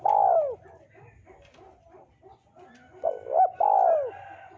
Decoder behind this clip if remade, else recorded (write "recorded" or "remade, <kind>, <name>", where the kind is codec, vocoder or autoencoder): recorded